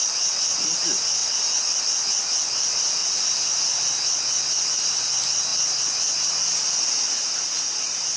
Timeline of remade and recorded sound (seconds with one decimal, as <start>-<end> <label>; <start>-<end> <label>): 0.0-8.2 recorded